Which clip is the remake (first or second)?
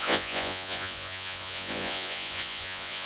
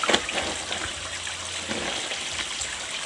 first